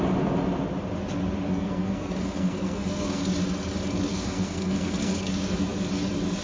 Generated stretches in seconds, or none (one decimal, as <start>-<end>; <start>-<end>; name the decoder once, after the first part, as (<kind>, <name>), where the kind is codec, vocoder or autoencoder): 1.5-3.2 (codec, SNAC); 4.1-5.3